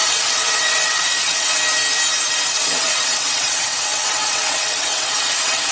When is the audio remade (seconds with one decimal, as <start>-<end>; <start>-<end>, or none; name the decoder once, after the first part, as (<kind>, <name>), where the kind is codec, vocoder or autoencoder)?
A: 0.0-1.5 (vocoder, WaveNeXt); 2.5-5.7